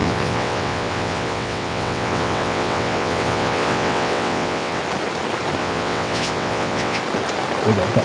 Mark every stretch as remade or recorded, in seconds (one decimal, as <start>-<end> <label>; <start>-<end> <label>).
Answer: 0.0-4.8 remade; 4.8-5.6 recorded; 5.6-7.0 remade; 7.0-8.0 recorded